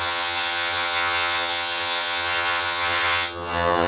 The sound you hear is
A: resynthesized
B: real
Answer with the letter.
A